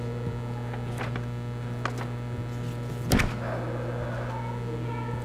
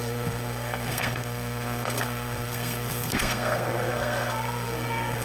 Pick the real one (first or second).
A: first